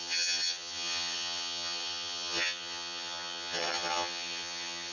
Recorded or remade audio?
remade